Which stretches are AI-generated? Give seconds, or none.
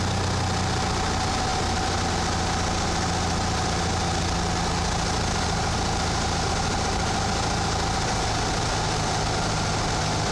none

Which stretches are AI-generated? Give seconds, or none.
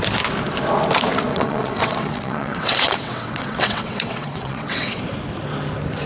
1.3-5.0